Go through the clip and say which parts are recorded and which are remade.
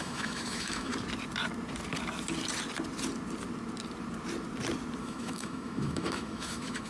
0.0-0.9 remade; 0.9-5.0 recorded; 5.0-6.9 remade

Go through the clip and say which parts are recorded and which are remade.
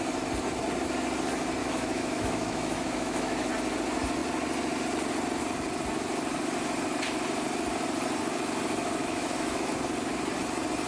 0.0-1.6 recorded; 1.6-3.5 remade; 3.5-9.0 recorded; 9.0-9.7 remade; 9.7-10.9 recorded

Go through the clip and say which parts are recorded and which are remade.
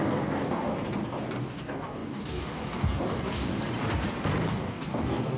0.0-0.7 remade; 0.7-1.4 recorded; 1.4-3.5 remade; 3.5-4.5 recorded; 4.5-5.4 remade